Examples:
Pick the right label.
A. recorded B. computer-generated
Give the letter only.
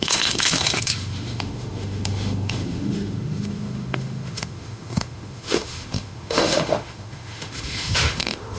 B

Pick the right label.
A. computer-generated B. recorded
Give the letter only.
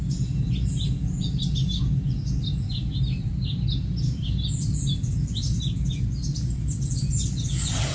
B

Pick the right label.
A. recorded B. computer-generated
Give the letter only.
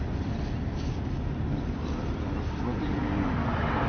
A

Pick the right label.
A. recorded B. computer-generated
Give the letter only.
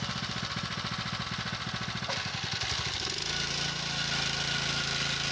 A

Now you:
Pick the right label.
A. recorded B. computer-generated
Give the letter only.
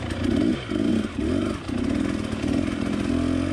A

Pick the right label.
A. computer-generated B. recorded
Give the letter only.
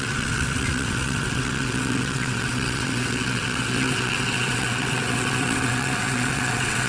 A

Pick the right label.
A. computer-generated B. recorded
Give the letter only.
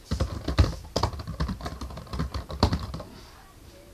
B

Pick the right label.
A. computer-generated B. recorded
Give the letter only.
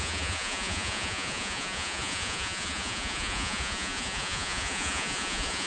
A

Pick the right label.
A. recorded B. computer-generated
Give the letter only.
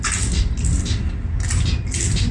A